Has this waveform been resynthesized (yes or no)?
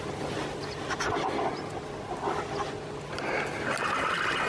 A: no